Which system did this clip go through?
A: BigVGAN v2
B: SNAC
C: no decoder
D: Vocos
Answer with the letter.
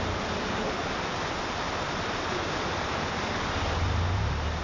C